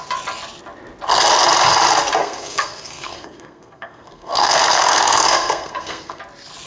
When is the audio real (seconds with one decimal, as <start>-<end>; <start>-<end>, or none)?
0.0-2.2; 6.2-6.7